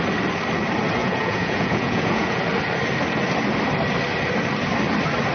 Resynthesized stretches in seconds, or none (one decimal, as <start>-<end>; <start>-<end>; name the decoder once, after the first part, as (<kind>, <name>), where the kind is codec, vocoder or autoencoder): 1.0-2.4 (vocoder, Vocos)